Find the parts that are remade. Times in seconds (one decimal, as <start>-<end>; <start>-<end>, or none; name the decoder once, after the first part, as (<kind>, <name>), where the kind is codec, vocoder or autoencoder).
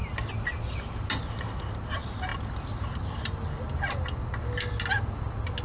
none